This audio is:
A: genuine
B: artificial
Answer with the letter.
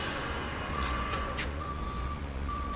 B